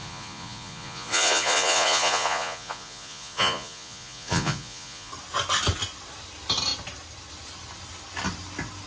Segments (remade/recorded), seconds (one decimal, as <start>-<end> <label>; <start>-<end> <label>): 0.0-5.1 remade; 5.1-8.9 recorded